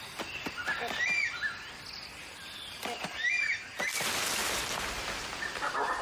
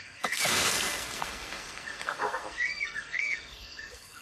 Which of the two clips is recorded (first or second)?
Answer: first